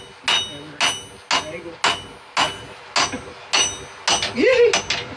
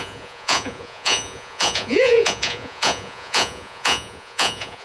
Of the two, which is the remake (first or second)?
second